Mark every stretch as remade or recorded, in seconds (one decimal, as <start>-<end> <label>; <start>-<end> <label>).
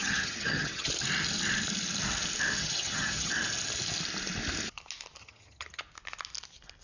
0.0-0.9 remade; 0.9-2.6 recorded; 2.6-3.3 remade; 3.3-5.2 recorded; 5.2-5.8 remade; 5.8-6.8 recorded